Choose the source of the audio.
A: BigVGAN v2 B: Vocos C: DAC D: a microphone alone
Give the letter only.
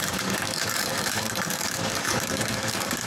C